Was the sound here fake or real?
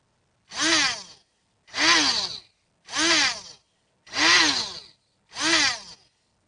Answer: real